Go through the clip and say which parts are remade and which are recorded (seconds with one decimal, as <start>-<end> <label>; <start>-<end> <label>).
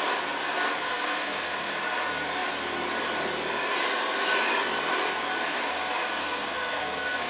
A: 0.0-0.8 recorded; 0.8-1.7 remade; 1.7-6.2 recorded; 6.2-7.3 remade